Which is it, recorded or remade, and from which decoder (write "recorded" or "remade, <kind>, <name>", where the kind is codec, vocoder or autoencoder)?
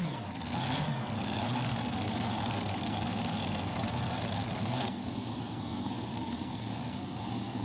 remade, codec, SNAC